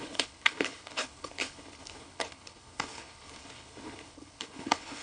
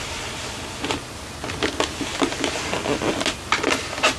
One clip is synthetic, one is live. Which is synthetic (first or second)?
first